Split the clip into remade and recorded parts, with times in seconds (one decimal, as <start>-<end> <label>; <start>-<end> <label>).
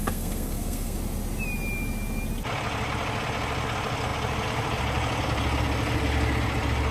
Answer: 0.0-1.0 remade; 1.0-6.9 recorded